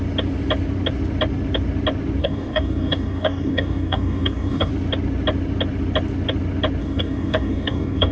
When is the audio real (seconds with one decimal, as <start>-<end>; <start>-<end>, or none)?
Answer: 0.0-2.2; 4.7-6.8